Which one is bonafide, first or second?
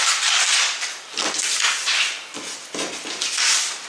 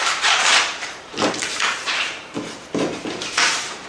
first